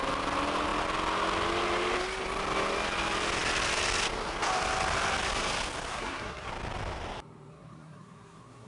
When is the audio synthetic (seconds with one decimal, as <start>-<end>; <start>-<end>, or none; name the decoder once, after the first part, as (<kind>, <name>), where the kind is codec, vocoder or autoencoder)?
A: 5.9-6.5 (codec, SNAC); 7.5-8.7